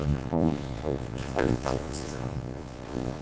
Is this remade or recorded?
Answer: remade